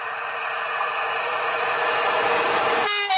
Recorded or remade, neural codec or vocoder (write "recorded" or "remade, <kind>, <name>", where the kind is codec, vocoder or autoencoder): recorded